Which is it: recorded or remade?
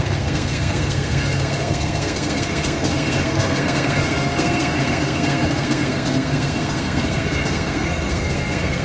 remade